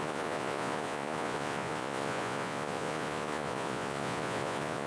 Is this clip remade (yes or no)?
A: yes